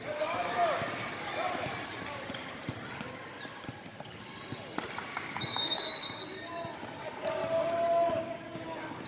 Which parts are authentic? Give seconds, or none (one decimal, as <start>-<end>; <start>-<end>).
1.3-5.1; 6.3-7.0; 7.4-8.1